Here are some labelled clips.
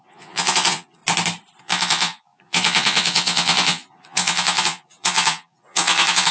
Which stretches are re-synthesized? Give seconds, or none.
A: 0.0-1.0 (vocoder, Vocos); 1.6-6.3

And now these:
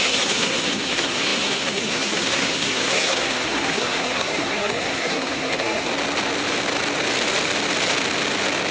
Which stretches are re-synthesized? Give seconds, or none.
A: 0.0-5.9 (codec, SNAC)